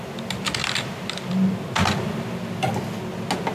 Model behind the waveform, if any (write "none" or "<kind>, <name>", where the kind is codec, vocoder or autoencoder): none